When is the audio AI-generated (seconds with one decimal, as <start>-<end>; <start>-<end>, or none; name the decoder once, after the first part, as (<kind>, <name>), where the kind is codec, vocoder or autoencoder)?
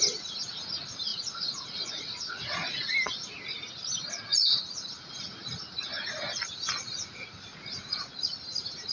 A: 1.1-2.9 (vocoder, Vocos); 7.5-8.1